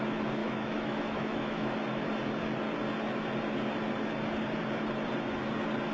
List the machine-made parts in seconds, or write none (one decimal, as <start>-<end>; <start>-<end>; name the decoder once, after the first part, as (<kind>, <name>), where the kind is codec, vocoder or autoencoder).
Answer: 0.4-1.8 (autoencoder, DAC-VAE)